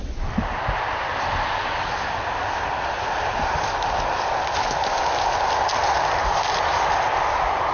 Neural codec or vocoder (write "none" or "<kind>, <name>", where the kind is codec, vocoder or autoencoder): none